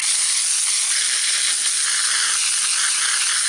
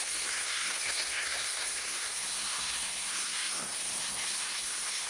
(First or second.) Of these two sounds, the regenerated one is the second